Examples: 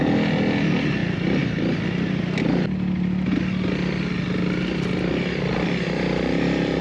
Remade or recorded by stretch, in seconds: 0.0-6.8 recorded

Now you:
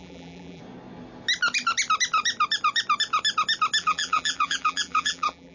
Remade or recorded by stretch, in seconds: 0.0-0.6 remade; 0.6-3.8 recorded; 3.8-5.5 remade

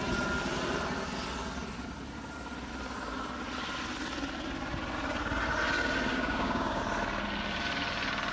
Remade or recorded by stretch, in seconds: 0.0-6.1 recorded; 6.1-6.8 remade; 6.8-8.3 recorded

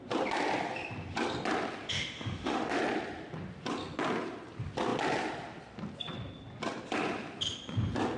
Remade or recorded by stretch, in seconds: 0.0-1.9 recorded; 1.9-2.8 remade; 2.8-8.2 recorded

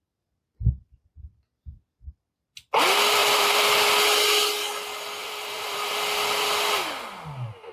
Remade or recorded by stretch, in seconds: 0.0-3.2 recorded; 3.2-3.9 remade; 3.9-5.2 recorded; 5.2-5.9 remade; 5.9-7.7 recorded

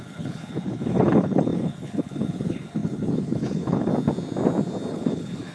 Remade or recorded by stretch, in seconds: 0.0-3.9 remade; 3.9-4.9 recorded; 4.9-5.5 remade

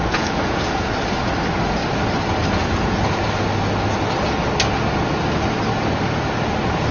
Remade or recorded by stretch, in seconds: 0.0-0.9 remade; 0.9-2.6 recorded; 2.6-3.3 remade; 3.3-6.9 recorded